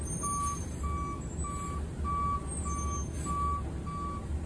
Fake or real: real